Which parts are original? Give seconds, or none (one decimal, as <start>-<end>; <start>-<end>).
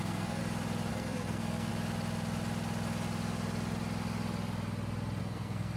0.4-0.9; 1.7-5.2